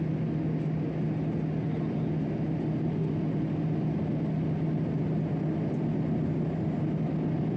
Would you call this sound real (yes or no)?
yes